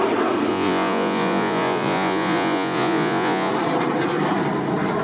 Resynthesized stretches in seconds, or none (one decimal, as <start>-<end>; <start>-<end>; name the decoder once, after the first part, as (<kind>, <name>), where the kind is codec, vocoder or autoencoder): 0.5-3.5 (vocoder, Vocos)